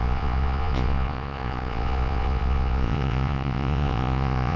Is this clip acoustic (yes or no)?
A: no